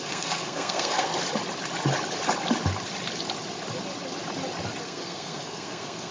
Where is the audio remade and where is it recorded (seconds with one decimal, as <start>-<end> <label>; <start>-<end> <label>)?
0.0-1.1 remade; 1.1-4.8 recorded; 4.8-6.1 remade